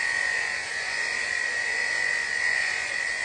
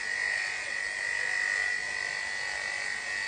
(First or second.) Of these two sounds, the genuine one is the second